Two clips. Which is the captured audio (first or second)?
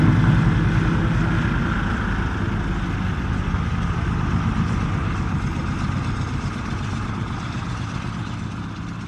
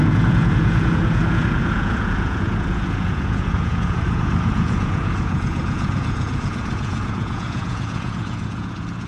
first